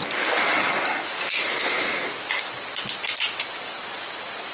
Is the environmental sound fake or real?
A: real